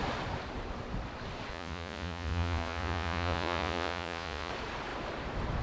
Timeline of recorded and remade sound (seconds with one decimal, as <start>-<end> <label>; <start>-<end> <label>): 0.0-1.5 recorded; 1.5-4.5 remade; 4.5-5.6 recorded

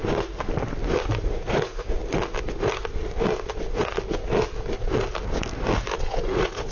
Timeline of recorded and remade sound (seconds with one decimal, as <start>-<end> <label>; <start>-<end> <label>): 0.0-1.2 recorded; 1.2-2.0 remade; 2.0-6.0 recorded; 6.0-6.7 remade

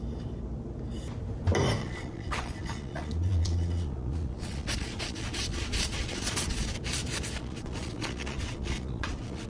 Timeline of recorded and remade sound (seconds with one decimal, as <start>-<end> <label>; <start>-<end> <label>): 0.0-1.8 recorded; 1.8-6.7 remade; 6.7-7.4 recorded; 7.4-9.5 remade

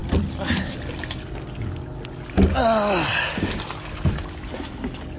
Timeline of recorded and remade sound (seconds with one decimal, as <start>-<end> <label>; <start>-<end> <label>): 0.0-5.2 recorded

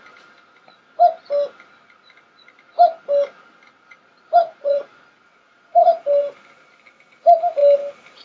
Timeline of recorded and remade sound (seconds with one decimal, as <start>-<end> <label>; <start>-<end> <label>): 0.0-4.4 recorded; 4.4-6.0 remade; 6.0-8.2 recorded

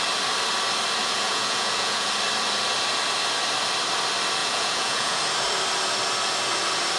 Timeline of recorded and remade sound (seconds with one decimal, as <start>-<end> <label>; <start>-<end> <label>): 0.0-1.0 recorded; 1.0-2.1 remade; 2.1-4.4 recorded; 4.4-5.2 remade; 5.2-7.0 recorded

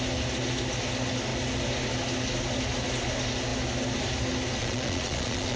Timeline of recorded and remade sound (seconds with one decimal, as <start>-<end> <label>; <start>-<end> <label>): 0.0-4.6 recorded; 4.6-5.6 remade